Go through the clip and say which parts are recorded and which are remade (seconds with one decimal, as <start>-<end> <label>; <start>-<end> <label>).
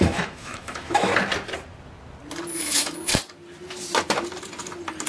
0.0-1.1 remade; 1.1-2.6 recorded; 2.6-3.1 remade; 3.1-5.1 recorded